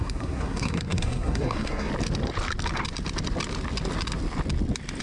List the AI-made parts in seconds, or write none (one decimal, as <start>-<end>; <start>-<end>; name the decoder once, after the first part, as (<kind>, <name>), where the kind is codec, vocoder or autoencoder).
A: 0.0-1.9 (codec, SNAC)